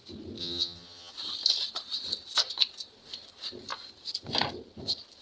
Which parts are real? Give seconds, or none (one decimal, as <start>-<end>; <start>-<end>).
0.0-0.4; 1.1-5.2